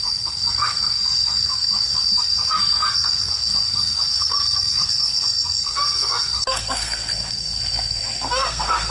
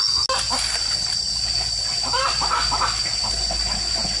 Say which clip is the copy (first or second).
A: first